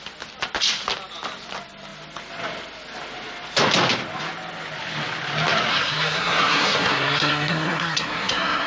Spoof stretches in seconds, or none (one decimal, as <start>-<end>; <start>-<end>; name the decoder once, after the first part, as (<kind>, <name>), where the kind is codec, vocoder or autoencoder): 5.7-8.7 (codec, SNAC)